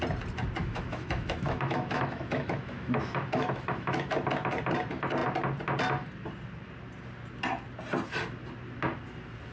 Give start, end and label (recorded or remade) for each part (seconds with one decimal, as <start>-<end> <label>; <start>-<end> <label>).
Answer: 0.0-0.6 recorded; 0.6-4.1 remade; 4.1-9.5 recorded